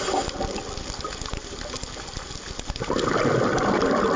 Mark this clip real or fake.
real